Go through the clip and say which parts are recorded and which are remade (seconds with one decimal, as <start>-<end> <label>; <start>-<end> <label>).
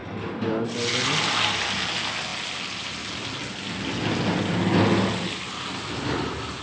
0.0-6.6 recorded